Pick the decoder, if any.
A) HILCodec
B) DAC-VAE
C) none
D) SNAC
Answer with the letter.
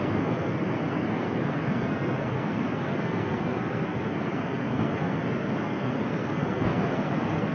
D